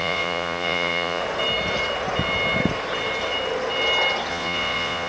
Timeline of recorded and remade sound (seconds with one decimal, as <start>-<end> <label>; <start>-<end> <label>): 0.0-1.2 remade; 1.2-4.3 recorded; 4.3-5.1 remade